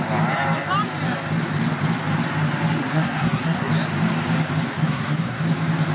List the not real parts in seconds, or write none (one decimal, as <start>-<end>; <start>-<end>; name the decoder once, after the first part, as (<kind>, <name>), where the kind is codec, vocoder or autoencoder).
2.8-3.7 (codec, SNAC); 4.8-5.4